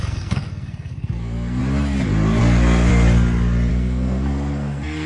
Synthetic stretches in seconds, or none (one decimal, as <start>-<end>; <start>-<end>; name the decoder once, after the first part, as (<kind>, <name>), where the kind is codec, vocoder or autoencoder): 0.0-1.6 (codec, SNAC); 2.4-2.9; 3.7-5.1